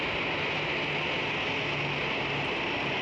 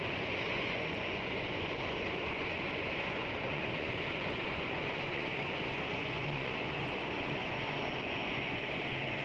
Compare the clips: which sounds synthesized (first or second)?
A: second